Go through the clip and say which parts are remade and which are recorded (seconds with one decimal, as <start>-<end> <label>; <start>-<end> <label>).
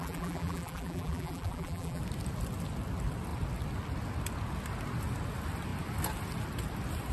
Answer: 0.0-2.0 remade; 2.0-7.1 recorded